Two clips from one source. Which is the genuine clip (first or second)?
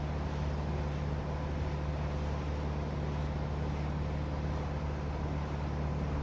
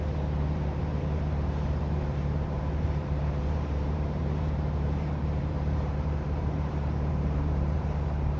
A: first